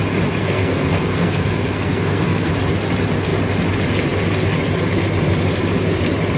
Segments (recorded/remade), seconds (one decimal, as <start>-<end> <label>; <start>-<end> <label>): 0.0-0.4 recorded; 0.4-2.5 remade; 2.5-6.4 recorded